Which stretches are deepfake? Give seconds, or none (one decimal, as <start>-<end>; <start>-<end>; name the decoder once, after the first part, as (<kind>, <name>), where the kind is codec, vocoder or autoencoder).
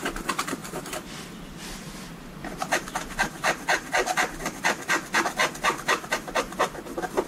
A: none